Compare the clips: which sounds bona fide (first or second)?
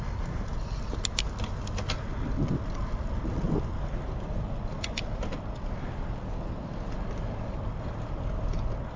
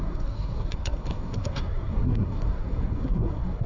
first